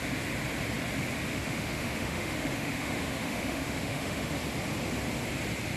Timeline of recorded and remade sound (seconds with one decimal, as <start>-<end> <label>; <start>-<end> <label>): 0.0-1.3 recorded; 1.3-4.3 remade; 4.3-5.8 recorded